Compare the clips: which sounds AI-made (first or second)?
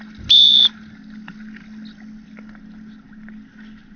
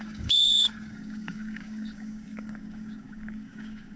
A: second